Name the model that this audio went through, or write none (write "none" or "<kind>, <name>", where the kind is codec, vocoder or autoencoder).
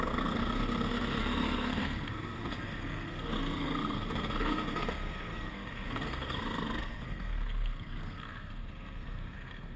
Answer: codec, SNAC